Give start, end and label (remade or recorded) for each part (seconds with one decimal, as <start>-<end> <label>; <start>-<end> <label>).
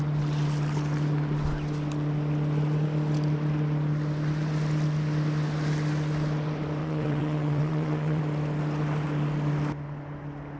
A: 0.0-6.8 recorded; 6.8-8.2 remade; 8.2-10.6 recorded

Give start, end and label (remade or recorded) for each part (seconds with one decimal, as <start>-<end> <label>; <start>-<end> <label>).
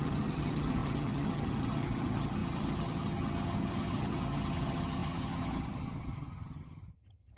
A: 0.0-7.4 remade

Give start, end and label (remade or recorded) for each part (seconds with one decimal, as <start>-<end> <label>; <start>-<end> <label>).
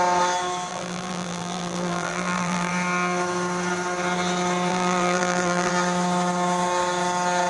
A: 0.0-0.7 recorded; 0.7-2.7 remade; 2.7-4.7 recorded; 4.7-5.7 remade; 5.7-7.5 recorded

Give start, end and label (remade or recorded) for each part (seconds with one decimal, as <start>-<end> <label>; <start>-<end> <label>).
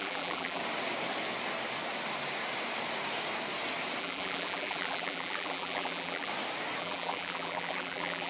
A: 0.0-0.6 remade; 0.6-4.0 recorded; 4.0-6.3 remade; 6.3-6.8 recorded; 6.8-8.3 remade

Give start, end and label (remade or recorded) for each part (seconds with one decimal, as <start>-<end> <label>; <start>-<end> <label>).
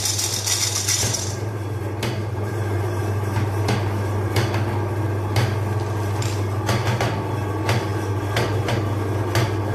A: 0.0-1.0 recorded; 1.0-1.8 remade; 1.8-2.2 recorded; 2.2-3.0 remade; 3.0-9.7 recorded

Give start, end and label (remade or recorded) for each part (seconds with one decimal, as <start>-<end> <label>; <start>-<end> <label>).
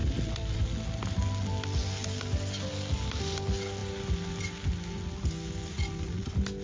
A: 0.0-0.6 remade; 0.6-6.6 recorded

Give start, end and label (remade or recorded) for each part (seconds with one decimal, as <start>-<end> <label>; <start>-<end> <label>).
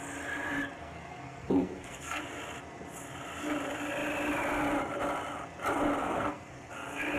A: 0.0-0.8 recorded; 0.8-2.2 remade; 2.2-6.0 recorded; 6.0-6.7 remade; 6.7-7.2 recorded